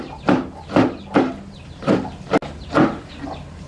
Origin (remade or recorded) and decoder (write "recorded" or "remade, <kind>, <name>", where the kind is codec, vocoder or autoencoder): recorded